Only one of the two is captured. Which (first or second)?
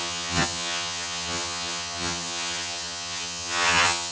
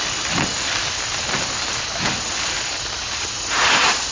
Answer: second